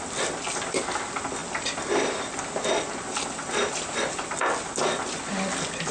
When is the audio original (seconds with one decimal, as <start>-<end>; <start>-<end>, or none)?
0.0-5.9